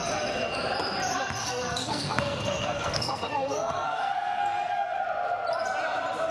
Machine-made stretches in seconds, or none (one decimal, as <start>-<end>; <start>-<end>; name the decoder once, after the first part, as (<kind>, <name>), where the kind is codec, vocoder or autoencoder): 1.4-5.0 (codec, SNAC)